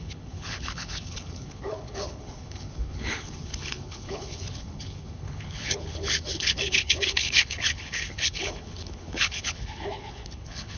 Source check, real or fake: fake